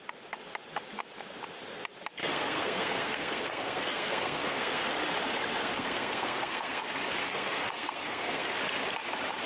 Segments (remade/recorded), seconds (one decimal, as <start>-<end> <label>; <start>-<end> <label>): 0.0-2.2 recorded; 2.2-4.9 remade; 4.9-5.6 recorded; 5.6-6.8 remade; 6.8-7.2 recorded; 7.2-8.5 remade; 8.5-9.5 recorded